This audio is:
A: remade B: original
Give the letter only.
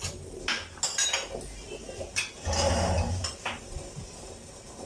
B